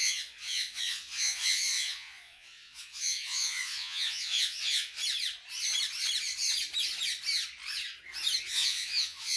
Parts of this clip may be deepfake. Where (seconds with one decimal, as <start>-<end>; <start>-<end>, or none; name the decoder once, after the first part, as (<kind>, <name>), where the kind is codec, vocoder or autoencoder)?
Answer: 0.0-5.0 (vocoder, Vocos); 8.5-9.4